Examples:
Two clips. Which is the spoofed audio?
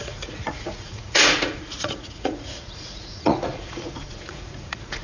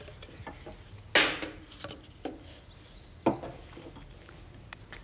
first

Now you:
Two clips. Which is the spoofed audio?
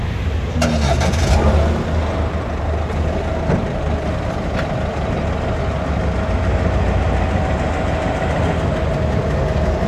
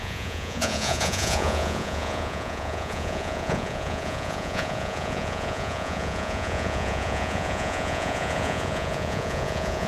second